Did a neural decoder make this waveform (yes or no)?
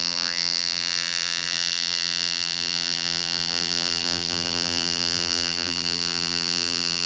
yes